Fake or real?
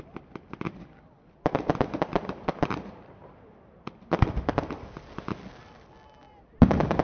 real